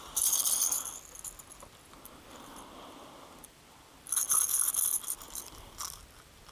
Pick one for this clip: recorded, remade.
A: recorded